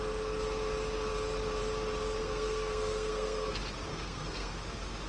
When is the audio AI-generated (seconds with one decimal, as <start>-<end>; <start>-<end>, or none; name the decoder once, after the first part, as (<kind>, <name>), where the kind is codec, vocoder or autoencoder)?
2.2-3.5 (codec, SNAC); 3.9-4.5